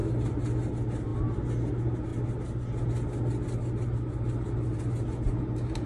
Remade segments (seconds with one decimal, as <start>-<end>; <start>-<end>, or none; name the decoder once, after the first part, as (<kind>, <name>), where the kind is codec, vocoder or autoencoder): none